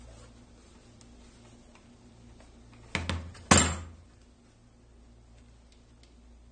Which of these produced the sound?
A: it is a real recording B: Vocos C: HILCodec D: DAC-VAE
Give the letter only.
A